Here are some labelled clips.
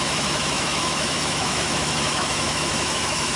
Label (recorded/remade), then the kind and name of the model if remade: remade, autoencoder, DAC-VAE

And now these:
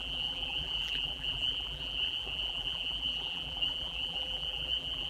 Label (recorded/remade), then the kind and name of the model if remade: remade, vocoder, BigVGAN v2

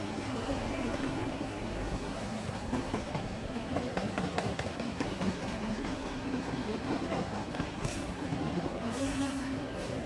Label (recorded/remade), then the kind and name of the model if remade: remade, codec, SNAC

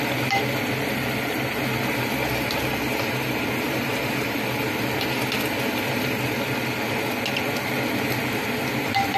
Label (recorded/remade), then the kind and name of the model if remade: recorded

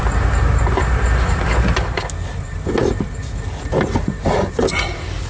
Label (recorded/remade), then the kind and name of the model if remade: recorded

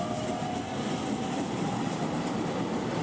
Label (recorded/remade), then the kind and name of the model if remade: recorded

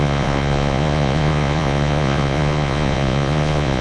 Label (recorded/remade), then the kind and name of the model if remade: remade, vocoder, Vocos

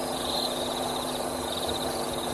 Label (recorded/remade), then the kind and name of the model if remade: remade, vocoder, Vocos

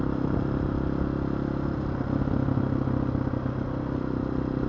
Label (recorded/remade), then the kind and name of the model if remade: recorded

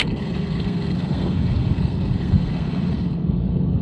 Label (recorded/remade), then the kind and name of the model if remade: remade, codec, SNAC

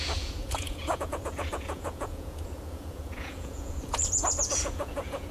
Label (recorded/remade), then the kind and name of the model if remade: remade, vocoder, Vocos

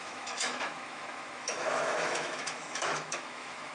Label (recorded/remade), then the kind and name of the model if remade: remade, autoencoder, DAC-VAE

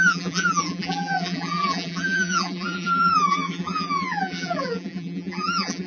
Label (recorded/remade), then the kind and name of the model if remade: remade, vocoder, BigVGAN v2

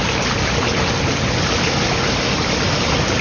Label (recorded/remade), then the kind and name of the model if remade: recorded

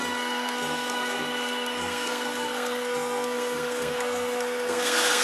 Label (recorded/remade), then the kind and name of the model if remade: remade, codec, SNAC